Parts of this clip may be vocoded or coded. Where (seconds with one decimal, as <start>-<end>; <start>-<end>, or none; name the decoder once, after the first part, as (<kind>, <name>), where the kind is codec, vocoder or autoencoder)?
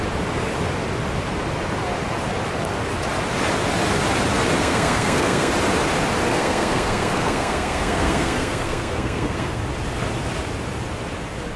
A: 4.6-5.5 (codec, SNAC); 6.3-9.6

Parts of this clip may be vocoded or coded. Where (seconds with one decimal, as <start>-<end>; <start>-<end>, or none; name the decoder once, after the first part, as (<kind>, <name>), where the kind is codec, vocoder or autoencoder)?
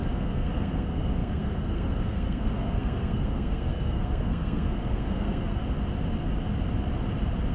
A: 0.0-5.6 (codec, SNAC)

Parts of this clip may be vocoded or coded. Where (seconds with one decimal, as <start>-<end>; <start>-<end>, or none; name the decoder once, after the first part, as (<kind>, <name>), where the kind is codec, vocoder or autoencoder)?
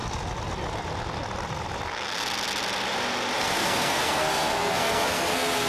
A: 3.4-5.7 (codec, SNAC)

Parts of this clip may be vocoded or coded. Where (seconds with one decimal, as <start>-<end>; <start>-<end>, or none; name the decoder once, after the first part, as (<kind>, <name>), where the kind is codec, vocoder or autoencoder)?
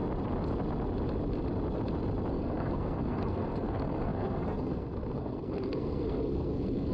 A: 2.3-6.9 (codec, SNAC)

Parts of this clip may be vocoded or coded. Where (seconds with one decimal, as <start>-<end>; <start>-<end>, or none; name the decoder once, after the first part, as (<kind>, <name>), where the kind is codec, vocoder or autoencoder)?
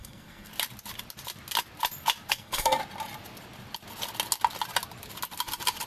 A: 0.0-0.5 (codec, SNAC); 2.3-2.8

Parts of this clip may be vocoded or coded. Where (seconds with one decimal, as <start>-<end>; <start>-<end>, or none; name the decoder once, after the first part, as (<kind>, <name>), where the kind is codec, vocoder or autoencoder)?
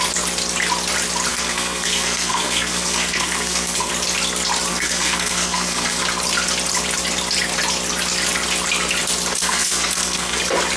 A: 1.3-3.9 (codec, SNAC); 4.7-6.0; 9.4-10.4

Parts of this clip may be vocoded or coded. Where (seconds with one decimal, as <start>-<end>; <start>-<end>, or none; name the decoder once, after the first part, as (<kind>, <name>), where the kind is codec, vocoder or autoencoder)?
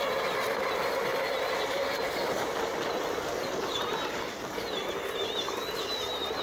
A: none